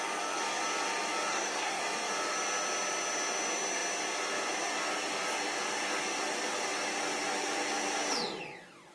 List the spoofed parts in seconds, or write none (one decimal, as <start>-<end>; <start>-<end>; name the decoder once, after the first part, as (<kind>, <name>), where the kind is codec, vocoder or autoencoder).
1.3-1.8 (codec, SNAC)